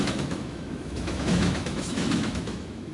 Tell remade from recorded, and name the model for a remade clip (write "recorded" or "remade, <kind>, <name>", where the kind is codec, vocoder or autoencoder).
remade, autoencoder, DAC-VAE